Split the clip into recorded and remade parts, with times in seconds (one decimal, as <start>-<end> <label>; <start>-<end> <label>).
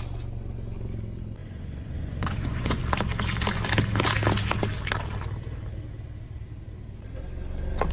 0.0-1.4 recorded; 1.4-2.8 remade; 2.8-7.9 recorded